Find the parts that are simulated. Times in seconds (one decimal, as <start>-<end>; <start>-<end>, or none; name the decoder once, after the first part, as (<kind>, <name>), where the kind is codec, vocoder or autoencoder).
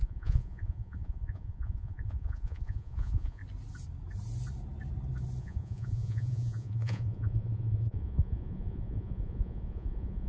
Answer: 0.0-3.4 (vocoder, Vocos); 5.4-10.3